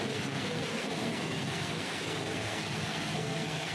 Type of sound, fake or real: fake